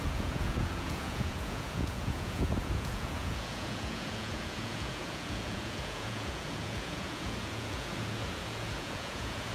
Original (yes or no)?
no